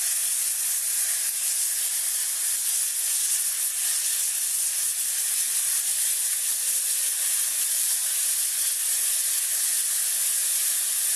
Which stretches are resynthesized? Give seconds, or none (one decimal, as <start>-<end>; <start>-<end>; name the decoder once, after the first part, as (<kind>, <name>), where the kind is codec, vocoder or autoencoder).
none